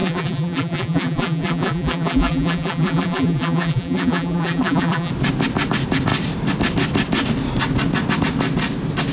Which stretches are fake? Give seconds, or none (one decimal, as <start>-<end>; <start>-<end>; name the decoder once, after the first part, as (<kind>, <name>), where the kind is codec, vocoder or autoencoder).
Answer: 0.0-5.1 (vocoder, BigVGAN v2)